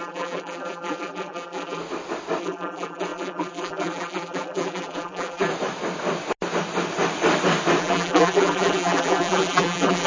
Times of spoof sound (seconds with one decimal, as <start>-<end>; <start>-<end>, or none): 0.0-1.8; 2.4-5.5; 7.8-10.1